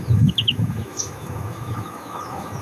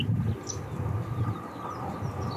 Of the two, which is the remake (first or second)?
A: first